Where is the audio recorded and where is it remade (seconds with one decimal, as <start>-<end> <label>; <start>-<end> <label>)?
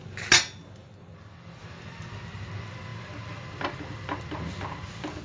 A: 0.0-5.2 recorded